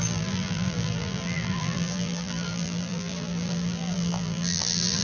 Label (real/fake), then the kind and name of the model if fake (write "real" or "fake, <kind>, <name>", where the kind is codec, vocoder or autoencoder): fake, vocoder, BigVGAN v2